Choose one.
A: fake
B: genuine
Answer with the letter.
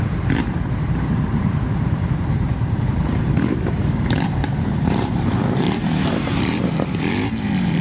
A